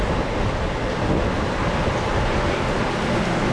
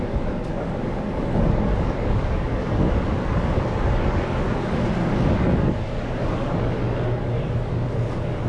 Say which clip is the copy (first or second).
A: second